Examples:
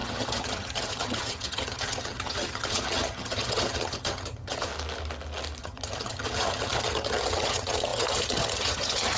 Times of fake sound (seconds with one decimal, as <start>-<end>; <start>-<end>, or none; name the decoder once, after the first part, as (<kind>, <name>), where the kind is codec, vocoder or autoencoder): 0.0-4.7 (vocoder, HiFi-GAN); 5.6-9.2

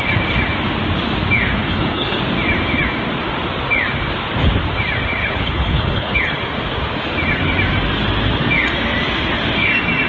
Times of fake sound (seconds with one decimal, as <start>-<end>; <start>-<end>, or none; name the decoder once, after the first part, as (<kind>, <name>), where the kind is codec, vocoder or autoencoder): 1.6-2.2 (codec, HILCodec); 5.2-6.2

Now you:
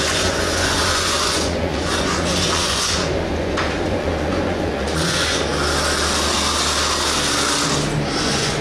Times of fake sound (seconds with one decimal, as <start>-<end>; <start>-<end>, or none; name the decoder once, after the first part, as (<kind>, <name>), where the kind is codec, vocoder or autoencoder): 0.0-5.5 (vocoder, Vocos); 8.2-8.6

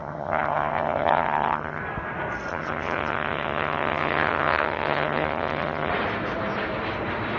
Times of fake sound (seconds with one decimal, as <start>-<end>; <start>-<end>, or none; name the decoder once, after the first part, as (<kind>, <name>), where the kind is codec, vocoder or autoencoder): 0.0-1.8 (vocoder, HiFi-GAN); 2.5-5.9

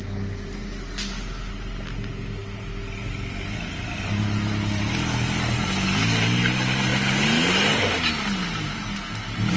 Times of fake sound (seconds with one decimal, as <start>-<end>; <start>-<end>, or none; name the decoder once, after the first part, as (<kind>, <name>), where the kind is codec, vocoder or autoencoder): none